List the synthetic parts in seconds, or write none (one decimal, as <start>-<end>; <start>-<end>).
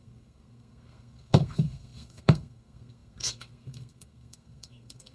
0.0-5.1